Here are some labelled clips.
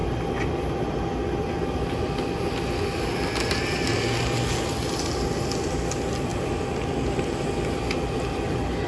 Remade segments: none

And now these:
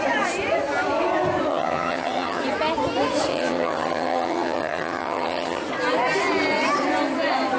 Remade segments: 1.5-2.4; 3.3-5.6

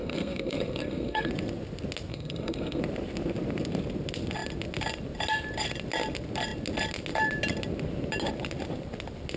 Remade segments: 0.0-1.3; 2.1-2.8

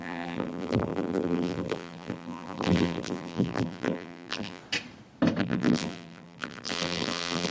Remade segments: 0.0-4.6; 5.4-7.5

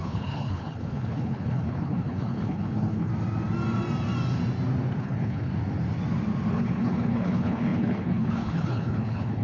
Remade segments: 0.0-3.1; 5.0-5.5; 6.5-9.4